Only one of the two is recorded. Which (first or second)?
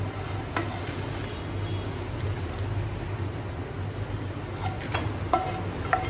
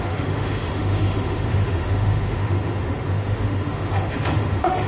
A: first